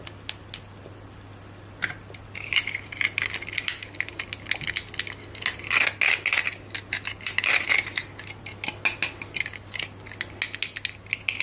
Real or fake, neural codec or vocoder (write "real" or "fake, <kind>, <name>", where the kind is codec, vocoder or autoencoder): real